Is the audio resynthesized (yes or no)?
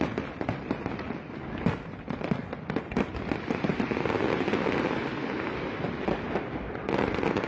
no